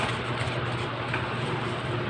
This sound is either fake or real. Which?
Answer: fake